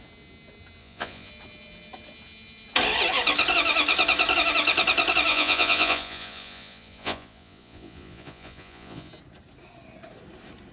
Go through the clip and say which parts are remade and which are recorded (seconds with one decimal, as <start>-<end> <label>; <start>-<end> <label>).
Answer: 0.0-0.8 recorded; 0.8-1.3 remade; 1.3-5.3 recorded; 5.3-9.1 remade; 9.1-10.7 recorded